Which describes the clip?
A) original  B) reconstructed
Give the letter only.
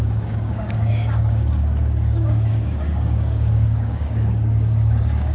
B